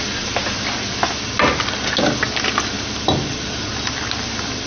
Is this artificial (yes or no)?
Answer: no